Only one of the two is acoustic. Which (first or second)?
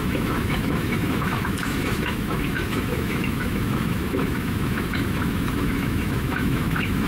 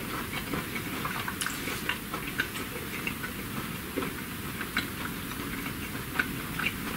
second